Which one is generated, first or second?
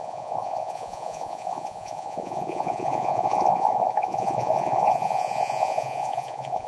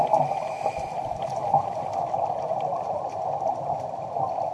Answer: first